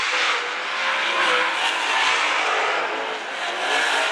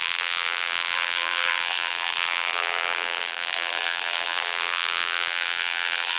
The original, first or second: first